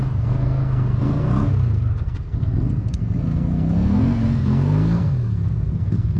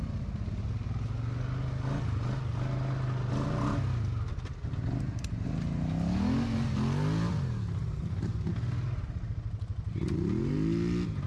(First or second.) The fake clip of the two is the first